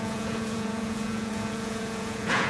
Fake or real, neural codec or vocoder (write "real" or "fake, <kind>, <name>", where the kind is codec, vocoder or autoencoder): fake, vocoder, Vocos